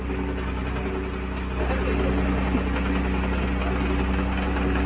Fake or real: real